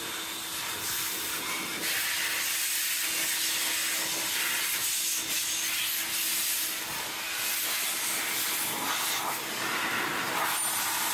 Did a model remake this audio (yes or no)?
no